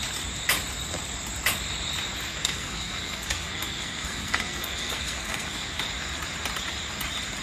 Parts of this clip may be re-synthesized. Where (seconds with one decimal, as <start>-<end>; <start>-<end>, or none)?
2.3-5.8